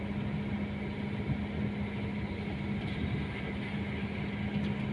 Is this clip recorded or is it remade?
recorded